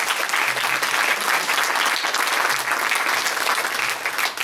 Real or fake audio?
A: real